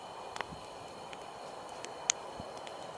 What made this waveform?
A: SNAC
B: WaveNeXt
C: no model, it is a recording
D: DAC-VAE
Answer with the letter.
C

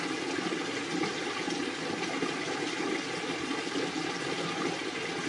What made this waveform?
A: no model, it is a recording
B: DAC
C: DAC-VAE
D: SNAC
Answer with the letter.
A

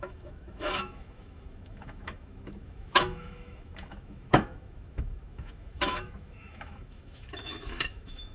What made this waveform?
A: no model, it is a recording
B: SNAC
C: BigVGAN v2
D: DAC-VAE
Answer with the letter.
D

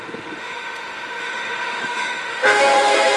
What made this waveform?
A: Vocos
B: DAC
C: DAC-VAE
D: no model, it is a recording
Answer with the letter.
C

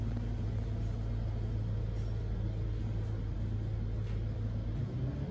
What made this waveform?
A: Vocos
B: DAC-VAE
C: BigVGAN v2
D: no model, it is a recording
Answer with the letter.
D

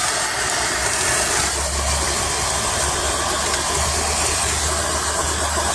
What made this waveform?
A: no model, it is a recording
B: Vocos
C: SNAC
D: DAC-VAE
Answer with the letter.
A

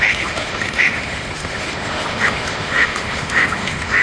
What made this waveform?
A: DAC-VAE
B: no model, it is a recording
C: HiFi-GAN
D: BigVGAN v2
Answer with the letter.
A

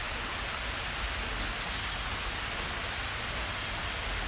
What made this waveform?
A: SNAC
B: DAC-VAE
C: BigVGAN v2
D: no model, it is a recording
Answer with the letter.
D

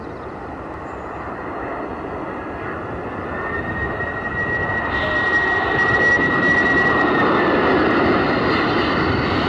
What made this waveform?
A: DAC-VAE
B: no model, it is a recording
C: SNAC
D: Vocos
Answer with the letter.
B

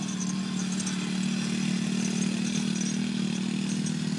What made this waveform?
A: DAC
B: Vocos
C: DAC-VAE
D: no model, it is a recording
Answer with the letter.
D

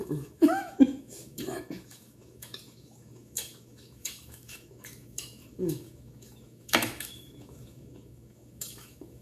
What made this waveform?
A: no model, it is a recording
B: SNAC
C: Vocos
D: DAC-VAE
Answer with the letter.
D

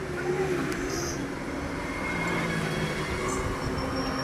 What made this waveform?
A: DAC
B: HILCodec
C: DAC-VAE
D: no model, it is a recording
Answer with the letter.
D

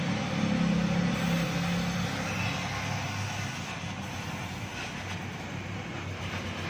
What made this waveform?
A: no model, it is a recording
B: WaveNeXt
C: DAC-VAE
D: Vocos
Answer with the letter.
A